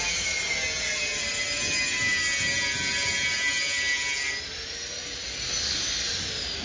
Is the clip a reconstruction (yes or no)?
no